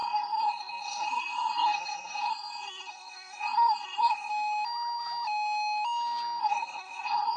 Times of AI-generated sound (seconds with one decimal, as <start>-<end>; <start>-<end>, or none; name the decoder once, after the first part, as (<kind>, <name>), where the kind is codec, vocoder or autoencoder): 0.0-4.3 (codec, SNAC); 6.4-7.4